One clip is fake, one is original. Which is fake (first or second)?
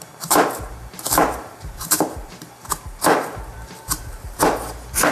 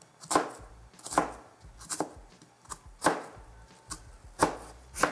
first